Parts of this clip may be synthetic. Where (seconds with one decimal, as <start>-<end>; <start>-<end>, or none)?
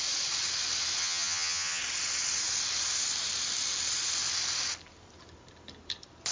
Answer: 1.0-1.8